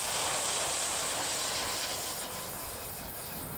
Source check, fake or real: real